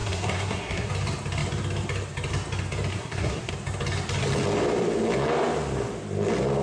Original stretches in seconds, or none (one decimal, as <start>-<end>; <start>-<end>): 0.9-2.9; 3.5-6.6